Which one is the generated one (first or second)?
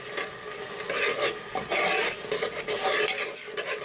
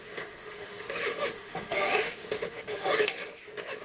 second